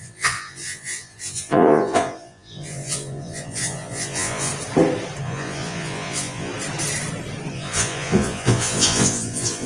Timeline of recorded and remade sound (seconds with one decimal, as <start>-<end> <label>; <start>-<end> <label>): 0.0-4.5 remade; 4.5-5.2 recorded; 5.2-6.5 remade; 6.5-7.5 recorded; 7.5-9.7 remade